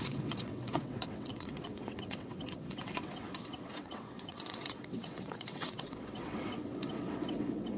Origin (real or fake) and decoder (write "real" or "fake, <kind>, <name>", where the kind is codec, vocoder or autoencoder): fake, vocoder, WaveNeXt